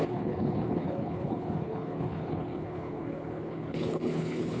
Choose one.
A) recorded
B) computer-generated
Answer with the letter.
B